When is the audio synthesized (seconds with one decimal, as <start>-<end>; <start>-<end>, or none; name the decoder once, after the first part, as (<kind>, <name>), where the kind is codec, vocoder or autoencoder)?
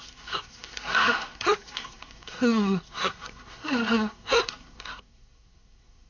0.0-6.1 (codec, SNAC)